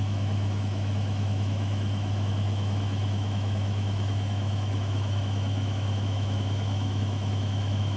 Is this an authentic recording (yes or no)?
no